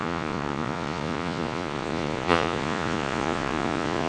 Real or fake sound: fake